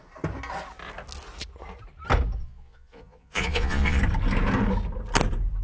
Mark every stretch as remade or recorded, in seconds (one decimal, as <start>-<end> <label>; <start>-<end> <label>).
0.0-2.4 recorded; 2.4-4.0 remade; 4.0-5.6 recorded